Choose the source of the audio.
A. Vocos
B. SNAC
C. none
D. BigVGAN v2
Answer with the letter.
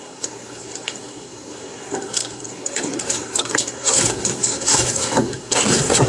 B